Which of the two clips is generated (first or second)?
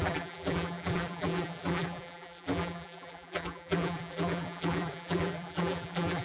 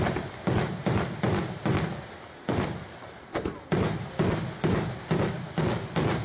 first